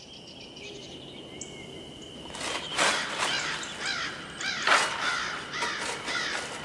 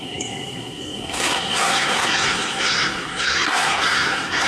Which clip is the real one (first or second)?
first